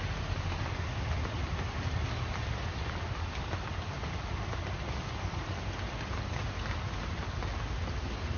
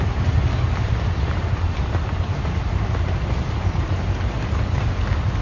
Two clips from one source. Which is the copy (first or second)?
second